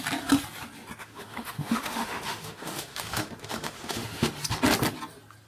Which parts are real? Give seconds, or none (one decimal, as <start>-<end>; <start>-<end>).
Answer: 0.0-1.0; 4.3-5.5